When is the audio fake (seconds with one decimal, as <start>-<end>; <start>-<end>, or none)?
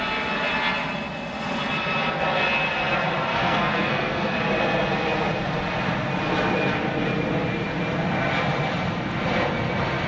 3.3-4.4